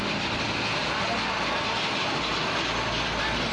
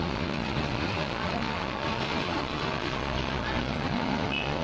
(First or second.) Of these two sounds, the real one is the first